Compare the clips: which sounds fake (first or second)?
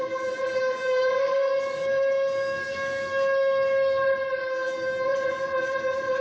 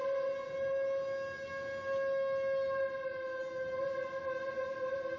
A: first